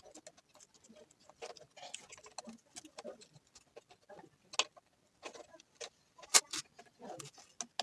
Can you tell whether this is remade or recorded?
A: recorded